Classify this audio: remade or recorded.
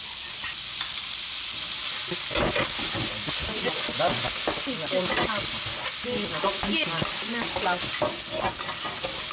recorded